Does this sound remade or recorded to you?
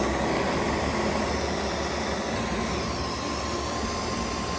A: recorded